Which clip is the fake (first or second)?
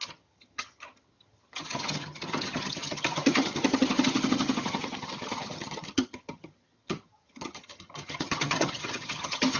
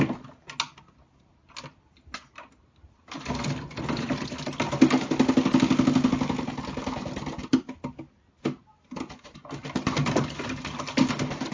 first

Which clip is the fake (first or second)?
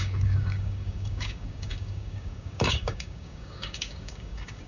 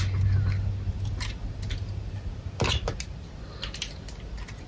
first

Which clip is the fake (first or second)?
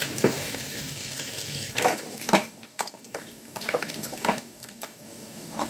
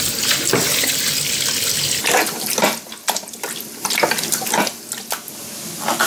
first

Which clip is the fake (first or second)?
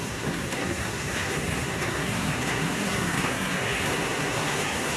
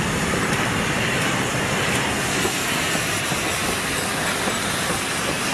first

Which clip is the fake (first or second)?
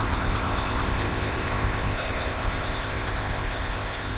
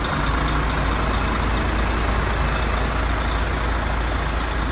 first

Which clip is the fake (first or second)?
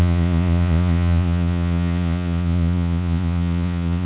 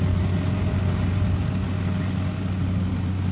first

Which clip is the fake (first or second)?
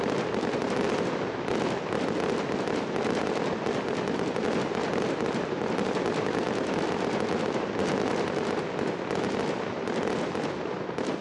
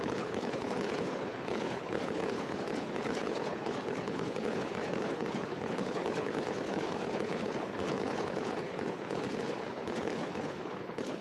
second